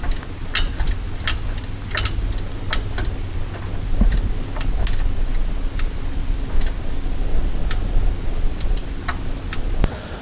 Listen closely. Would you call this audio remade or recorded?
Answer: recorded